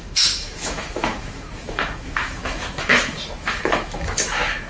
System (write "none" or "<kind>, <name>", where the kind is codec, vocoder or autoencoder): autoencoder, DAC-VAE